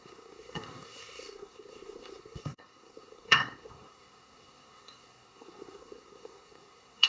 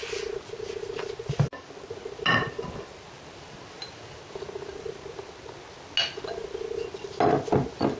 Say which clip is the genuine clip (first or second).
second